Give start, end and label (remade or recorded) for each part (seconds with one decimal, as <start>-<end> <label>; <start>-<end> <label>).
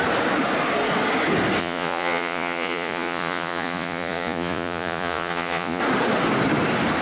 0.0-1.6 recorded; 1.6-5.8 remade; 5.8-7.0 recorded